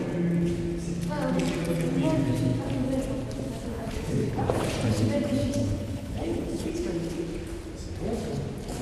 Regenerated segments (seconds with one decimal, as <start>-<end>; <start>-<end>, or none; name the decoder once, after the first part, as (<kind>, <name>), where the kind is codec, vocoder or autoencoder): 3.7-4.4 (codec, HILCodec); 5.6-6.7